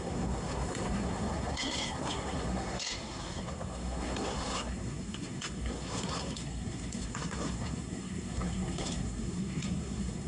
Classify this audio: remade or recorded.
remade